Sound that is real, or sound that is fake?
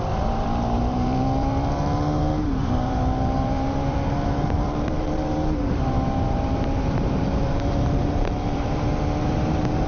fake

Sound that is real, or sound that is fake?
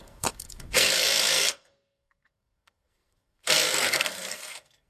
fake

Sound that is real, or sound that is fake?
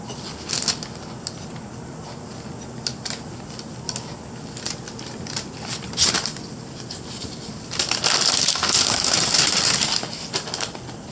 real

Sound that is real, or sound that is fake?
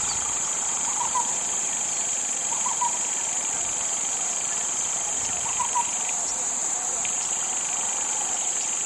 fake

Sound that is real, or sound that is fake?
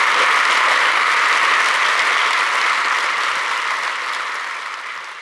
real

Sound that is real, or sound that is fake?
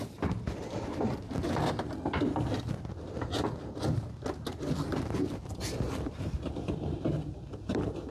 fake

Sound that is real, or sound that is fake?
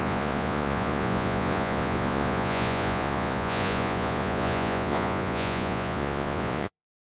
fake